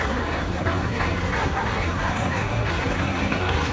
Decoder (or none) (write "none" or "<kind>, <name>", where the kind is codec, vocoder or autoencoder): codec, SNAC